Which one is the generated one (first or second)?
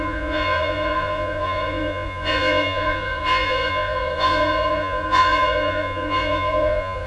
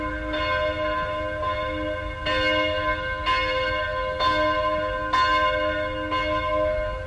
first